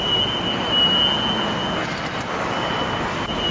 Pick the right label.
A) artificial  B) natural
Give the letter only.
B